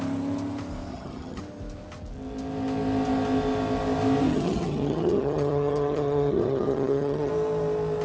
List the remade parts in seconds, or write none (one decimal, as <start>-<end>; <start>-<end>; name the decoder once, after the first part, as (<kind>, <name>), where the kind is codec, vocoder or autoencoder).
0.9-1.4 (vocoder, HiFi-GAN); 4.3-7.3